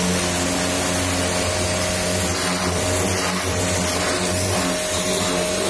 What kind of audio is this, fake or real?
real